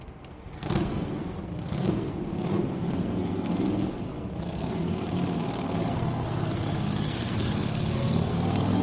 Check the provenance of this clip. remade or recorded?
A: remade